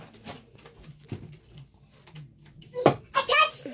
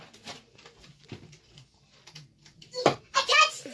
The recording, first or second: first